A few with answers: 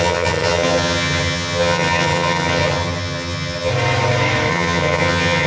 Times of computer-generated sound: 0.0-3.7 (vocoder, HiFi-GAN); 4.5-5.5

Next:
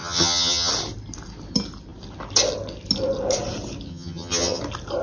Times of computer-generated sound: 0.0-0.7 (vocoder, HiFi-GAN); 3.9-4.6

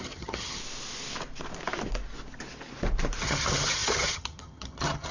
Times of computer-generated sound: 0.0-0.6 (vocoder, HiFi-GAN); 3.2-5.1

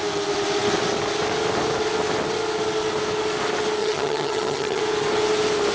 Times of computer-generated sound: 3.8-4.8 (vocoder, HiFi-GAN)